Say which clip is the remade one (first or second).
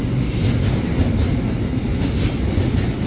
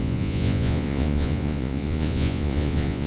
second